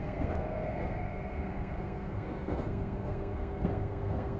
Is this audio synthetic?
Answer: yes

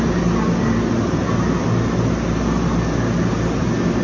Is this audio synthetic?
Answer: no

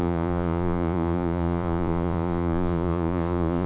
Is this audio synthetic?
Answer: yes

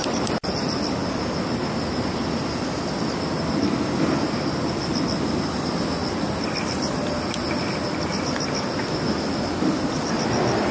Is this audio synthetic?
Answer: no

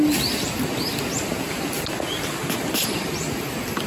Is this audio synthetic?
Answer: no